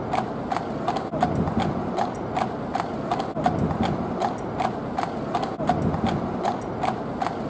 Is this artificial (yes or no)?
no